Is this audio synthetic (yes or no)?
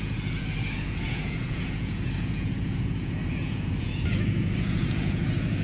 yes